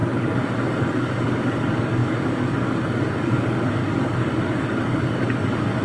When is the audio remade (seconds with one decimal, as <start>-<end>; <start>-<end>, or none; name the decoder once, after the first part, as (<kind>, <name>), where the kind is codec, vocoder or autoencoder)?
0.0-5.8 (codec, DAC)